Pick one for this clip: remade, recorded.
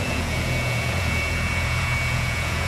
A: remade